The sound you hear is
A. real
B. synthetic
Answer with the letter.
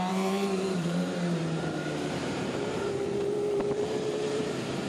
B